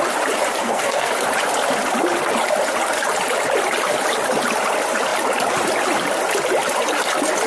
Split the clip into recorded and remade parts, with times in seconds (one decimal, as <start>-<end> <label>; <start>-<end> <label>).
0.0-0.6 recorded; 0.6-1.1 remade; 1.1-7.5 recorded